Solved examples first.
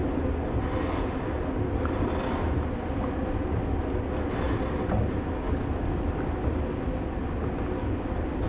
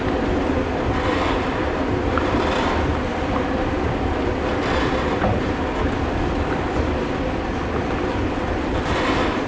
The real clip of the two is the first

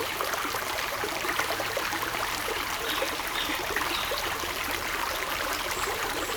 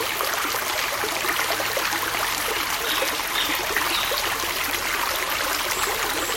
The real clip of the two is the second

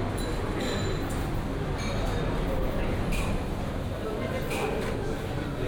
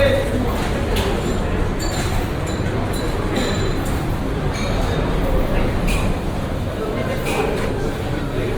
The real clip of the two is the first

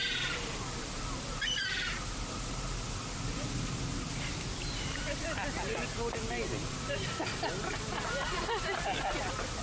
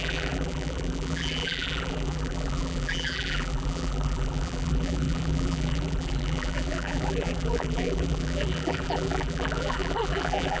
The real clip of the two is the first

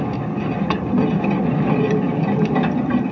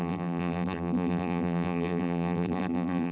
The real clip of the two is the first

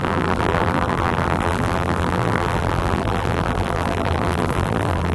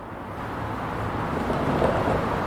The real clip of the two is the second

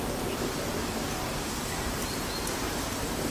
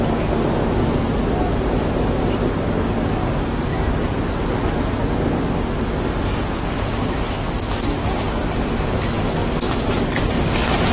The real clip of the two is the second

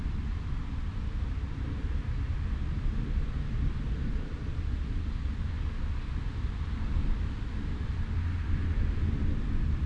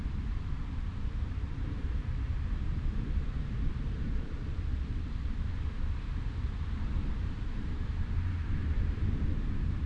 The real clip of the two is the first